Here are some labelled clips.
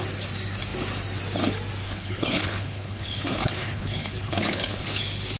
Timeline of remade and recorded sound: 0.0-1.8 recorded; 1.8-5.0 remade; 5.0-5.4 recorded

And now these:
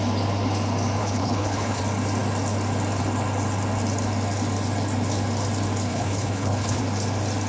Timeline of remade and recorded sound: 0.0-1.0 recorded; 1.0-1.8 remade; 1.8-5.9 recorded; 5.9-6.8 remade; 6.8-7.5 recorded

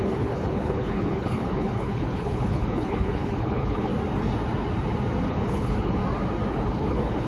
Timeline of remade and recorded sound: 0.0-3.9 remade; 3.9-5.3 recorded; 5.3-6.0 remade; 6.0-6.5 recorded; 6.5-7.3 remade

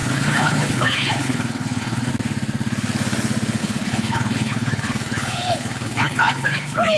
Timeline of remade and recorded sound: 0.0-2.1 remade; 2.1-3.6 recorded; 3.6-7.0 remade

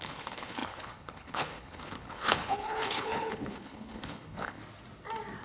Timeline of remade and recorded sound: 0.0-4.6 remade; 4.6-5.4 recorded